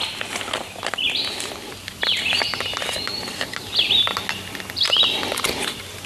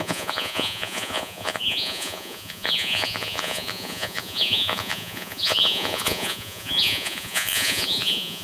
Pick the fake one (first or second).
second